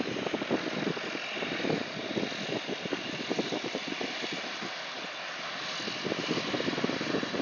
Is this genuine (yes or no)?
yes